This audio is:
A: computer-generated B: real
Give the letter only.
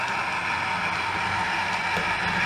B